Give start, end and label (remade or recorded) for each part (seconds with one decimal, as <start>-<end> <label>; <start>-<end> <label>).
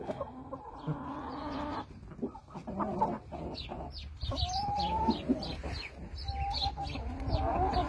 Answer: 0.0-7.9 recorded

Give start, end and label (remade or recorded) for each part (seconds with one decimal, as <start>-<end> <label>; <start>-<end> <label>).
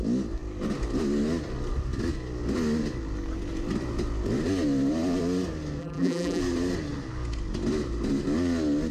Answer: 0.0-5.8 recorded; 5.8-6.4 remade; 6.4-8.9 recorded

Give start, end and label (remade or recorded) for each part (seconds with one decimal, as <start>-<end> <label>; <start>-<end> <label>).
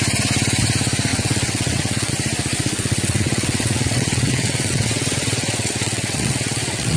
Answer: 0.0-1.1 recorded; 1.1-2.1 remade; 2.1-2.5 recorded; 2.5-7.0 remade